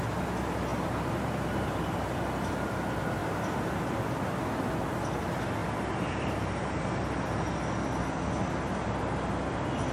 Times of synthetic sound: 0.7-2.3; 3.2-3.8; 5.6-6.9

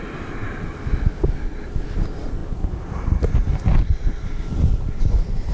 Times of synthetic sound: none

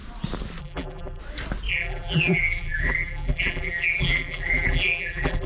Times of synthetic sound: 0.6-1.2; 1.7-5.5

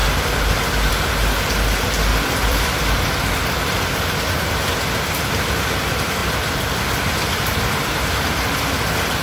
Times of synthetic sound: 0.0-0.9; 2.1-5.1; 6.2-7.8

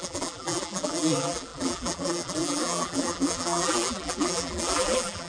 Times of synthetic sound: 0.0-5.3

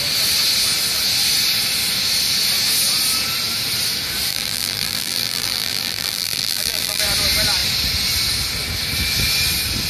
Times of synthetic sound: 4.3-7.0

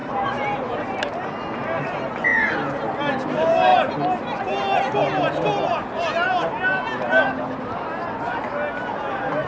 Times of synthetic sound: 0.0-1.0